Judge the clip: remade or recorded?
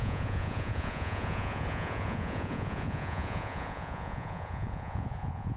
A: remade